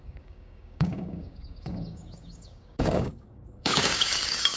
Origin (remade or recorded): remade